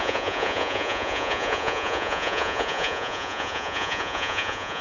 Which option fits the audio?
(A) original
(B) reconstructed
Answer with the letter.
B